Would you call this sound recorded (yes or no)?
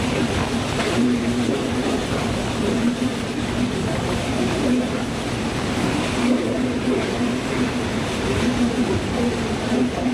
yes